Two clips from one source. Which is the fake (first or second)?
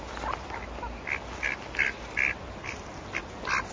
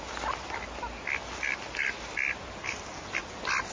second